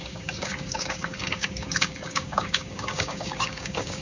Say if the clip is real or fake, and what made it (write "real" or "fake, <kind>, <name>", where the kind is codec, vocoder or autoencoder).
fake, codec, DAC